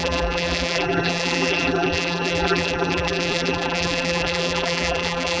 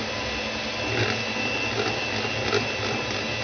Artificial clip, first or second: first